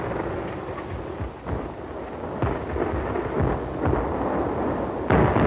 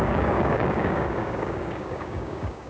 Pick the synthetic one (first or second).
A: second